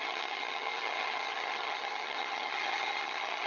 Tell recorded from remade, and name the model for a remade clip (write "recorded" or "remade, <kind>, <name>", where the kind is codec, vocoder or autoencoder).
remade, vocoder, HiFi-GAN